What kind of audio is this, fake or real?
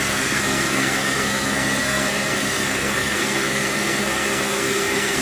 fake